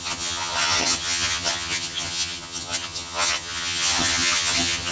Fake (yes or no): yes